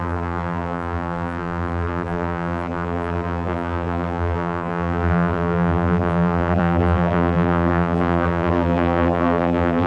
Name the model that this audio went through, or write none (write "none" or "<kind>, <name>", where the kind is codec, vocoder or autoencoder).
vocoder, BigVGAN v2